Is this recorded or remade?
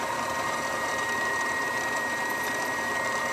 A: remade